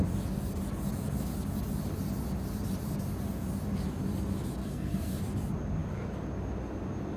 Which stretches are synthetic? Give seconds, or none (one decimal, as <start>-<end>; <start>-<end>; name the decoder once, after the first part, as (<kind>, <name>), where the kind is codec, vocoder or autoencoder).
4.6-5.2 (codec, SNAC)

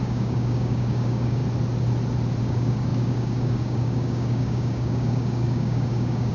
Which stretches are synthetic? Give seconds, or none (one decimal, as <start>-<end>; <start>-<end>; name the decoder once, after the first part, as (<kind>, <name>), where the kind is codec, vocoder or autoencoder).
0.0-1.4 (codec, DAC); 2.4-6.3

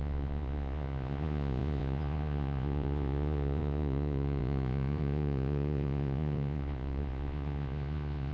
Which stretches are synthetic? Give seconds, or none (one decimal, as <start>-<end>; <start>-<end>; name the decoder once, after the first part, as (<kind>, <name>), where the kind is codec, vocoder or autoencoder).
0.0-8.3 (vocoder, Vocos)

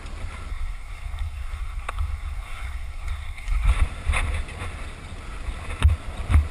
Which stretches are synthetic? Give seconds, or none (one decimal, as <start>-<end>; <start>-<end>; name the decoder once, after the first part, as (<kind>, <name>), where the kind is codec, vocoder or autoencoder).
0.5-3.7 (codec, SNAC)